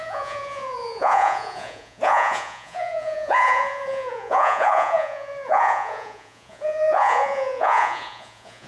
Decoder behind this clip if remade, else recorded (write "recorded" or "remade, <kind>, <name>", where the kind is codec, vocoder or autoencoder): remade, vocoder, Vocos